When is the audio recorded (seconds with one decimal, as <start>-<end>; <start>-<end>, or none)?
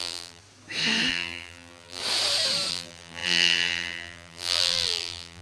0.4-1.1; 2.0-2.7